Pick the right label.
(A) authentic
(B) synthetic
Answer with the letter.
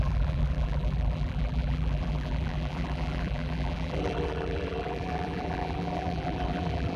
B